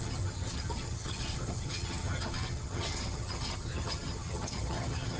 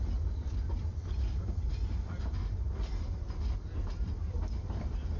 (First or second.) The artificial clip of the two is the first